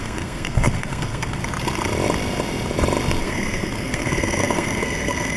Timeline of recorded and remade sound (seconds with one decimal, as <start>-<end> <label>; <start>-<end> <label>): 0.0-1.4 remade; 1.4-3.2 recorded; 3.2-5.4 remade